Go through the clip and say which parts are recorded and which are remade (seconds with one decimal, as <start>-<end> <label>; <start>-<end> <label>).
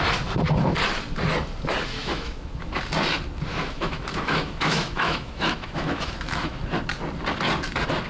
0.0-2.0 recorded; 2.0-2.7 remade; 2.7-3.5 recorded; 3.5-6.6 remade; 6.6-8.1 recorded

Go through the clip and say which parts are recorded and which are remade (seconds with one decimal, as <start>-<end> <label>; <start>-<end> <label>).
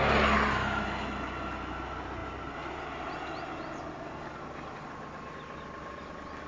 0.0-6.5 recorded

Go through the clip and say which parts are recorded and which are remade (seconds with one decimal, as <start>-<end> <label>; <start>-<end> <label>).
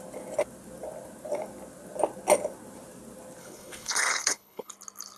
0.0-3.4 recorded; 3.4-4.7 remade; 4.7-5.2 recorded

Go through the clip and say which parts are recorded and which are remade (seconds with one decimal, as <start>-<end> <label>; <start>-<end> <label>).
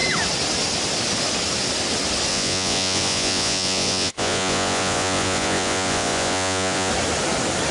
0.0-2.3 recorded; 2.3-6.9 remade; 6.9-7.7 recorded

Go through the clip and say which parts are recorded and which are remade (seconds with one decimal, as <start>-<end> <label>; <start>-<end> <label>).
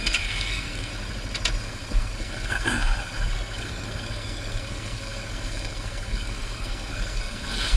0.0-0.9 remade; 0.9-1.6 recorded; 1.6-7.8 remade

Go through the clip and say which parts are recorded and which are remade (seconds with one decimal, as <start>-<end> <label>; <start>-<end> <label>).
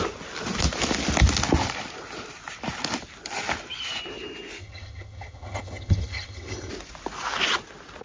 0.0-4.6 recorded; 4.6-6.7 remade; 6.7-8.0 recorded